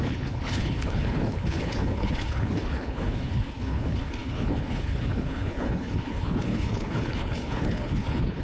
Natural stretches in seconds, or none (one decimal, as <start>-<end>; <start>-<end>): none